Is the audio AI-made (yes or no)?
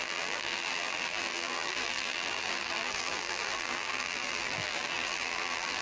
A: yes